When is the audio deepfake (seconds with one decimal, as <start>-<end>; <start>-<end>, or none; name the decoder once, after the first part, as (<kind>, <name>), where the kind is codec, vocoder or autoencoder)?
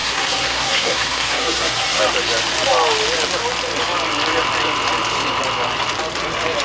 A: 0.0-2.0 (codec, SNAC)